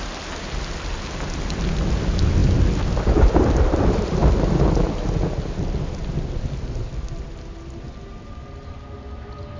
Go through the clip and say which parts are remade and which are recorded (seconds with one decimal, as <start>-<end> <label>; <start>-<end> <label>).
0.0-9.6 recorded